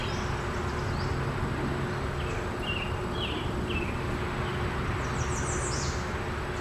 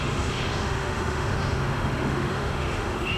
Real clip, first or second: first